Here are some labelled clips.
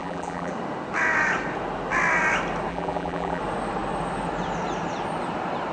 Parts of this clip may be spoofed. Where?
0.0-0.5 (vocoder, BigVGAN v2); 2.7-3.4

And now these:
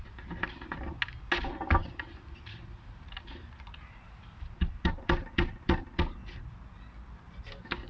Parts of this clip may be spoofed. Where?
1.8-6.0 (vocoder, BigVGAN v2)

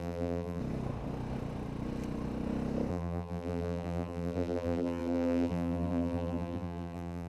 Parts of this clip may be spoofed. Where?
0.0-0.6 (vocoder, BigVGAN v2); 2.9-7.3

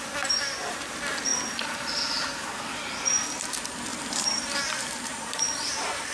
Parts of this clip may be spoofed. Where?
3.9-5.2 (vocoder, BigVGAN v2)

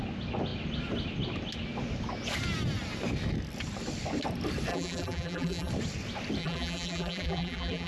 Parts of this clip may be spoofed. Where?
4.7-5.7 (vocoder, BigVGAN v2); 6.4-7.9